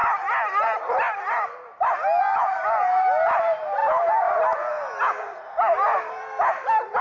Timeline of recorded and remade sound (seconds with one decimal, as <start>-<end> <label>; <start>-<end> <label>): 0.0-7.0 recorded